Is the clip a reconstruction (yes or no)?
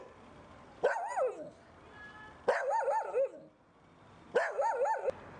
no